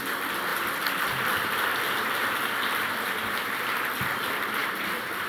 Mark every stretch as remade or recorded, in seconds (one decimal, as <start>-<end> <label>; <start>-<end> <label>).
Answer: 0.0-0.5 recorded; 0.5-3.6 remade; 3.6-4.6 recorded; 4.6-5.3 remade